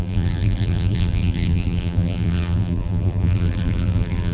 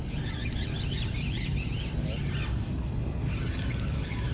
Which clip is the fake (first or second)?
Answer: first